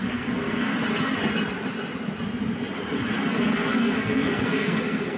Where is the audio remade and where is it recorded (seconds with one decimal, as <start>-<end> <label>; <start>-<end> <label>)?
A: 0.0-0.7 remade; 0.7-3.3 recorded; 3.3-5.2 remade